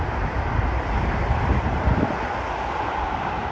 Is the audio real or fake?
real